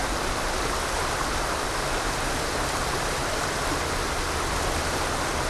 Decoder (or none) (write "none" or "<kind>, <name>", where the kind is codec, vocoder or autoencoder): none